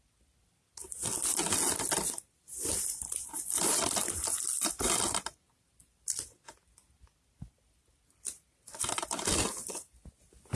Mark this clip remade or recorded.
recorded